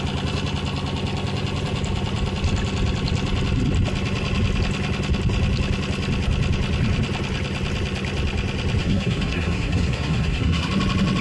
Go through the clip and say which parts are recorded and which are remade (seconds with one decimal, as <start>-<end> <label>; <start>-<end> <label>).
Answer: 0.0-8.8 recorded; 8.8-10.7 remade; 10.7-11.2 recorded